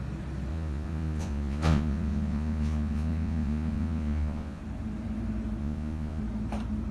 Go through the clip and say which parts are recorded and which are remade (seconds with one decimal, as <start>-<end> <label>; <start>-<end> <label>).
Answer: 0.0-0.5 recorded; 0.5-4.6 remade; 4.6-5.6 recorded; 5.6-6.2 remade; 6.2-6.9 recorded